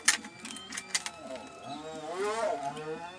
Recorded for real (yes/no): yes